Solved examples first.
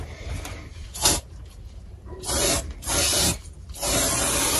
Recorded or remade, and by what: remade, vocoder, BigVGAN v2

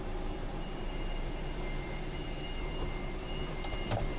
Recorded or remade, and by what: remade, vocoder, BigVGAN v2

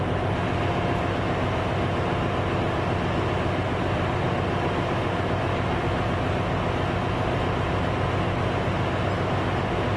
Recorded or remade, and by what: recorded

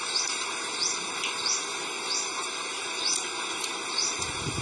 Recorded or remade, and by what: remade, vocoder, BigVGAN v2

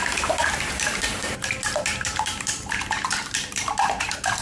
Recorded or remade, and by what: remade, vocoder, BigVGAN v2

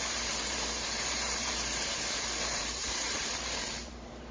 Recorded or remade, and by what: remade, vocoder, BigVGAN v2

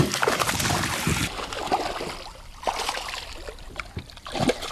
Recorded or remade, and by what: recorded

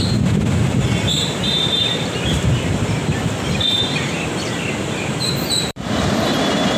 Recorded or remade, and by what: remade, vocoder, BigVGAN v2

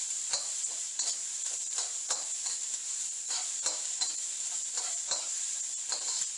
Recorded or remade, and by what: remade, vocoder, BigVGAN v2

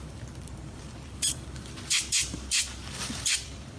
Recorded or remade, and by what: remade, vocoder, BigVGAN v2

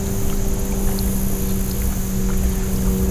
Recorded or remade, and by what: recorded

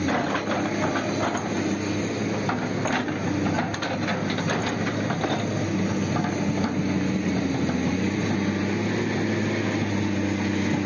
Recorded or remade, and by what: recorded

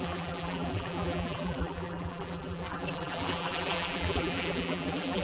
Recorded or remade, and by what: remade, vocoder, BigVGAN v2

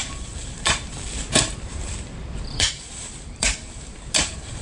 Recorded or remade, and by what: remade, vocoder, BigVGAN v2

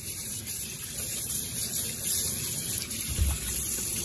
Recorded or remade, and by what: remade, vocoder, BigVGAN v2